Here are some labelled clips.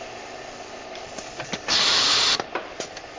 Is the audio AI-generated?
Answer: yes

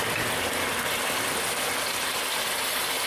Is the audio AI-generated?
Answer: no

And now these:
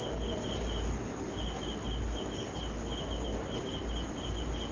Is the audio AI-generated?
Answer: no